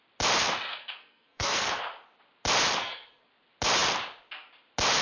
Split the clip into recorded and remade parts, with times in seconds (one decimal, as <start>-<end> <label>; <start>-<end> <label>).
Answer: 0.0-0.7 recorded; 0.7-1.8 remade; 1.8-2.8 recorded; 2.8-3.3 remade; 3.3-5.0 recorded